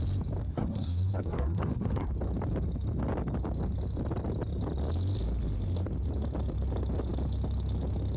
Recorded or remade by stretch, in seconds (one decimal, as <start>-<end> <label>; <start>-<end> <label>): 0.0-0.4 recorded; 0.4-2.1 remade; 2.1-8.2 recorded

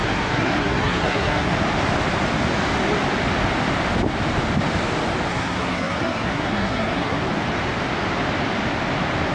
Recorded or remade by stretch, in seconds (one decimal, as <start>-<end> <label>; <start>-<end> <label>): 0.0-1.5 remade; 1.5-5.3 recorded; 5.3-7.2 remade; 7.2-9.3 recorded

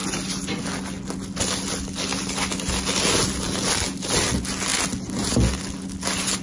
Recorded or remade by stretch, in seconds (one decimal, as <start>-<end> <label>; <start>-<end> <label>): 0.0-6.4 recorded

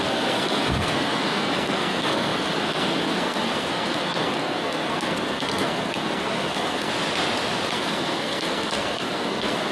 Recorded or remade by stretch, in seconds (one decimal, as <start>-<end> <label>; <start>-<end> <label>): 0.0-6.9 remade; 6.9-7.7 recorded; 7.7-9.7 remade

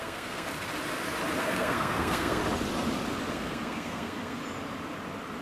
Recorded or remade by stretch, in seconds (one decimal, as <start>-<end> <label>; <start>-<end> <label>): 0.0-0.5 remade; 0.5-1.4 recorded; 1.4-2.4 remade; 2.4-3.3 recorded; 3.3-4.4 remade; 4.4-5.4 recorded

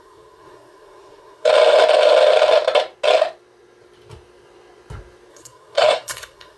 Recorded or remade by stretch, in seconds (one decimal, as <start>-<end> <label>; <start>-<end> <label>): 0.0-1.5 remade; 1.5-5.3 recorded; 5.3-6.6 remade